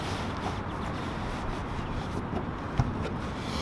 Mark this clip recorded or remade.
recorded